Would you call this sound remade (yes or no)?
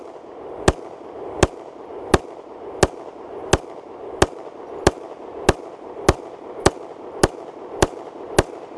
no